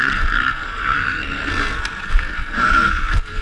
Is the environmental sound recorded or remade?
remade